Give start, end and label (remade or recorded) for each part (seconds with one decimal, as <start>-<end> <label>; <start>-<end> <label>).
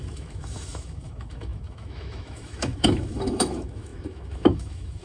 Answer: 0.0-5.0 remade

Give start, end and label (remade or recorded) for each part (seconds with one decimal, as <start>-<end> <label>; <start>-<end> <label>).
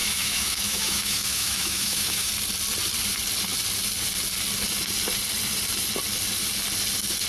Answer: 0.0-2.3 remade; 2.3-7.3 recorded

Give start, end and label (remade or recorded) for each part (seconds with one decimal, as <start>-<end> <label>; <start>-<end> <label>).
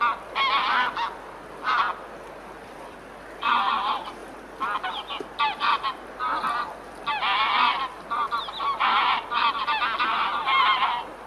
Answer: 0.0-11.3 recorded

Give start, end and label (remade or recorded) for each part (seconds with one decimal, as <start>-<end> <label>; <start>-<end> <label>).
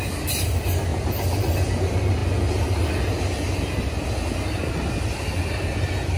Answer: 0.0-6.2 recorded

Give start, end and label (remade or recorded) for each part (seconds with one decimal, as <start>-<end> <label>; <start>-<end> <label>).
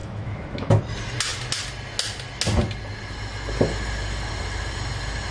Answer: 0.0-0.8 remade; 0.8-5.3 recorded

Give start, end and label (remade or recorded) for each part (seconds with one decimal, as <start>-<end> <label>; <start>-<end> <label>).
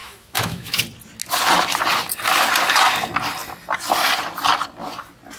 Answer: 0.0-0.8 remade; 0.8-5.4 recorded